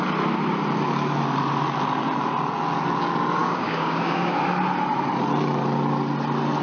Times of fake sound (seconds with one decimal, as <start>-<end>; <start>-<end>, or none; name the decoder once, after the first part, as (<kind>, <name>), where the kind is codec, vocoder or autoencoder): 3.4-4.3 (codec, DAC)